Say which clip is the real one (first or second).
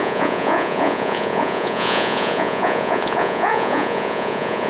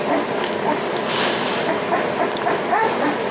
second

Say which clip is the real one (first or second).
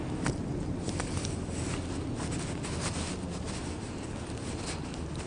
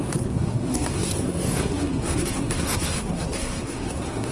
first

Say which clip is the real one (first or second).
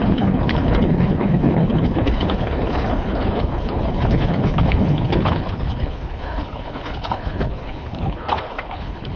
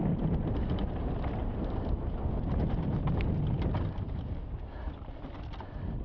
second